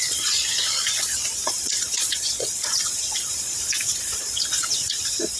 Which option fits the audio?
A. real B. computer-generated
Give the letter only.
B